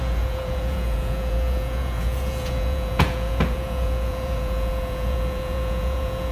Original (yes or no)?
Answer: no